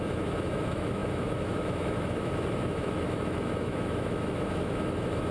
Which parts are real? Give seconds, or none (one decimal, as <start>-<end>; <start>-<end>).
none